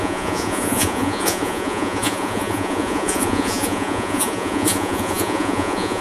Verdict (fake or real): fake